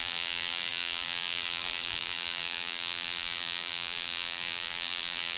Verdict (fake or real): fake